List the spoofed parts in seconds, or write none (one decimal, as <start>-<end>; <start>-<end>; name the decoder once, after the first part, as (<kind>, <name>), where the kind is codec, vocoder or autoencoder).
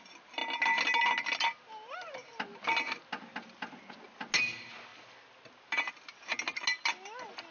none